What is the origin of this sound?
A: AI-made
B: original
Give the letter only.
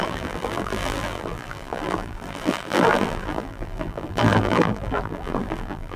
A